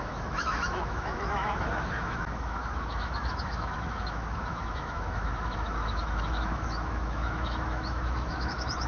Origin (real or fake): fake